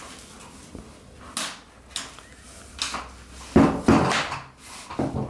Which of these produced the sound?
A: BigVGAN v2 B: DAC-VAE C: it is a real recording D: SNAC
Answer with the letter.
C